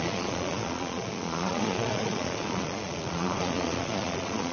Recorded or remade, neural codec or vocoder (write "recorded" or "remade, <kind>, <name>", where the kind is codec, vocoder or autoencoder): remade, vocoder, Vocos